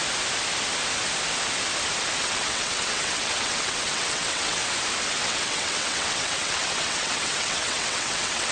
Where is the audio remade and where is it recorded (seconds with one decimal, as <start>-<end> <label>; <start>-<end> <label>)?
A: 0.0-2.2 recorded; 2.2-4.6 remade; 4.6-5.1 recorded; 5.1-8.5 remade